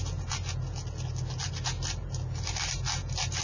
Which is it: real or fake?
real